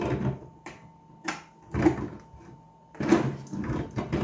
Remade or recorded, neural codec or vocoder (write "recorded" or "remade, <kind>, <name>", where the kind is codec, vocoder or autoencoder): recorded